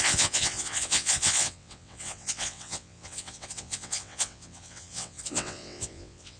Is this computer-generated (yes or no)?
yes